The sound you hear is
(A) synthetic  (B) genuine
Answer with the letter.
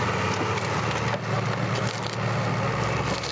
B